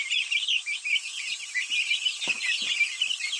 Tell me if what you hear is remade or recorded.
recorded